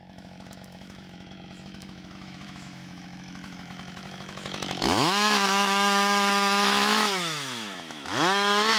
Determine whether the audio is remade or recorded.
remade